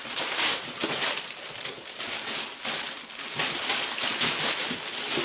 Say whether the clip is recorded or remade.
recorded